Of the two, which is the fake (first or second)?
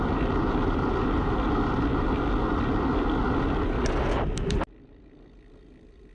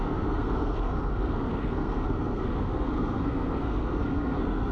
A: second